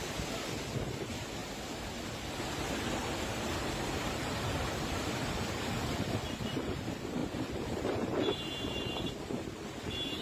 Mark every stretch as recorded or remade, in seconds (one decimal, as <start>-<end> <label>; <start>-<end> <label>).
0.0-1.4 recorded; 1.4-2.0 remade; 2.0-10.2 recorded